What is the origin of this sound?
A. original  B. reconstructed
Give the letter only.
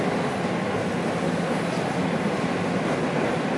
A